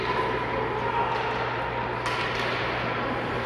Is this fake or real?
real